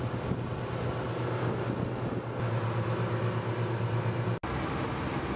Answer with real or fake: real